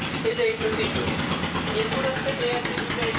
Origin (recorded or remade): recorded